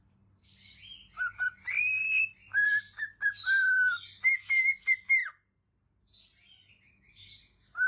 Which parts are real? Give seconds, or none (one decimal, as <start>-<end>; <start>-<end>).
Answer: 0.0-7.9